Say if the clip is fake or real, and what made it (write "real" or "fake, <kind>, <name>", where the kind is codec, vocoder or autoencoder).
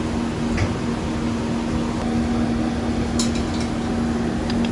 real